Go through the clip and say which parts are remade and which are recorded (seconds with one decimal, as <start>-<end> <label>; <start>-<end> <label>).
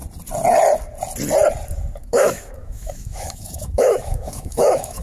0.0-2.0 recorded; 2.0-5.0 remade